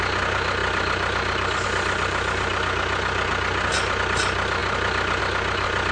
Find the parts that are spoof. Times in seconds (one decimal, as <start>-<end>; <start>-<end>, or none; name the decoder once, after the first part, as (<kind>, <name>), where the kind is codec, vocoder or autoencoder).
none